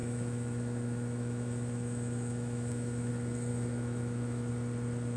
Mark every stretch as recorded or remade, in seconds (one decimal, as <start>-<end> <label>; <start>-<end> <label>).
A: 0.0-3.1 remade; 3.1-3.5 recorded; 3.5-4.5 remade; 4.5-5.2 recorded